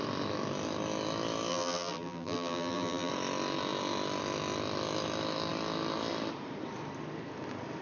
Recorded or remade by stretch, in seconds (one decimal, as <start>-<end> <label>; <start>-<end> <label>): 0.0-1.5 recorded; 1.5-3.1 remade; 3.1-7.8 recorded

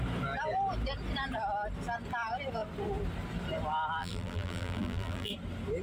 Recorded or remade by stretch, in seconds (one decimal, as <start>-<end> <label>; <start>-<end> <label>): 0.0-4.0 recorded; 4.0-5.3 remade; 5.3-5.8 recorded